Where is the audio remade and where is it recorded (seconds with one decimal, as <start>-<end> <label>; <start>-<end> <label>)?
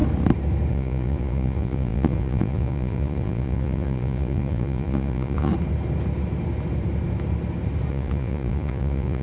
0.0-0.7 recorded; 0.7-5.5 remade; 5.5-7.9 recorded; 7.9-9.2 remade